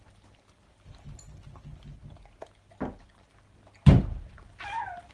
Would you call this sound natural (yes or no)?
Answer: yes